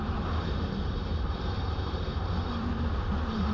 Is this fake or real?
fake